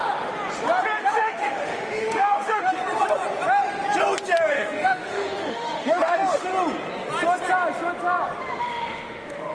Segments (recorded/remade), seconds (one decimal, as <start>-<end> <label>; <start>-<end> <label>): 0.0-1.0 recorded; 1.0-2.8 remade; 2.8-4.5 recorded; 4.5-6.5 remade; 6.5-8.6 recorded; 8.6-9.5 remade